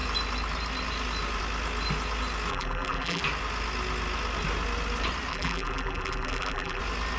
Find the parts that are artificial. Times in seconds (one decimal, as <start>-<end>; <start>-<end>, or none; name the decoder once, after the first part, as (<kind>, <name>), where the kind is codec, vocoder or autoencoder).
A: 2.5-3.2 (vocoder, BigVGAN v2); 5.3-6.8